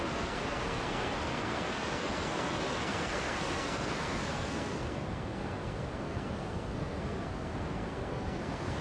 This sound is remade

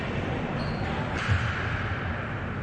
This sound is remade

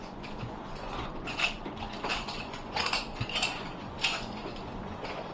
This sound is remade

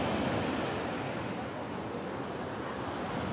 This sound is recorded